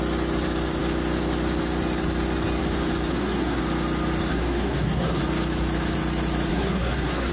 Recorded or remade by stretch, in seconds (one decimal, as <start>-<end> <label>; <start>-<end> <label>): 0.0-3.1 recorded; 3.1-3.6 remade; 3.6-4.3 recorded; 4.3-5.2 remade; 5.2-6.5 recorded; 6.5-7.3 remade